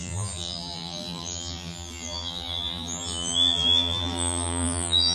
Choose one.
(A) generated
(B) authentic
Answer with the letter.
A